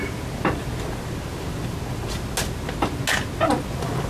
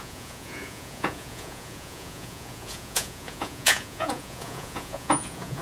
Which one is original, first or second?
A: first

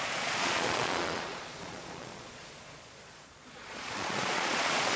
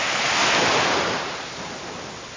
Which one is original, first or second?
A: second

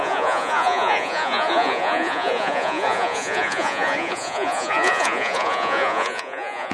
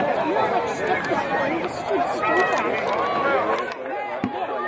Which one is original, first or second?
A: second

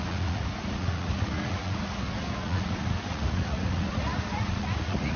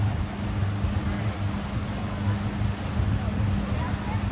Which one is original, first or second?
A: second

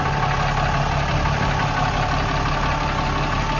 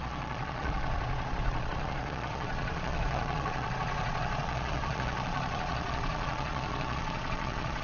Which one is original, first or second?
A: first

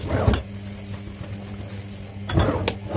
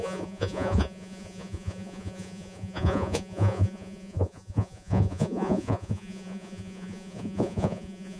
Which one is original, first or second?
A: first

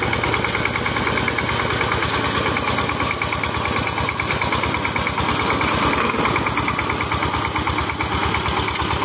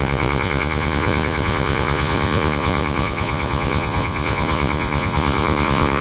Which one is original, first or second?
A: first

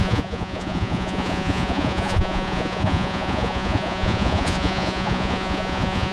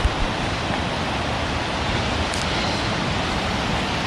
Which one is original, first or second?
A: second